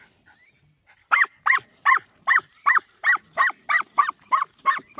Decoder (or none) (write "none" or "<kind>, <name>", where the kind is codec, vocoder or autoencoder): none